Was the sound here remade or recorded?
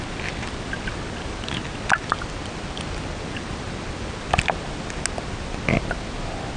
recorded